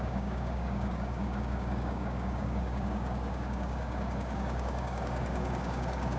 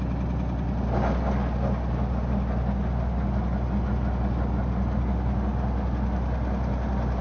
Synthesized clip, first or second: first